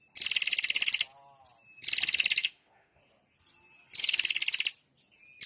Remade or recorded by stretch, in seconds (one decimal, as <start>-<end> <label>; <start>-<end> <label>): 0.0-2.4 recorded; 2.4-3.0 remade; 3.0-5.5 recorded